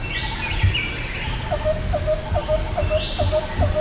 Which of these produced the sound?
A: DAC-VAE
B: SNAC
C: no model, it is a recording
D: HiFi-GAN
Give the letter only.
C